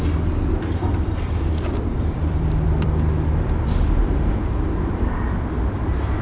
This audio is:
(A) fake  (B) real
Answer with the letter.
A